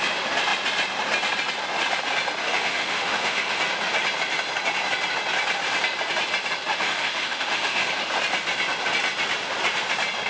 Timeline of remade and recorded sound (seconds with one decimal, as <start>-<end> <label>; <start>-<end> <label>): 0.0-2.4 recorded; 2.4-3.6 remade; 3.6-6.7 recorded; 6.7-7.9 remade; 7.9-10.3 recorded